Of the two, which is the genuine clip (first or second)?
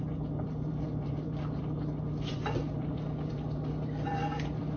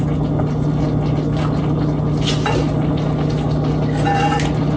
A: second